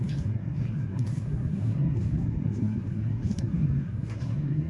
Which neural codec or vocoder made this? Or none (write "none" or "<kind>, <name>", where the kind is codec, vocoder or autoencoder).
codec, SNAC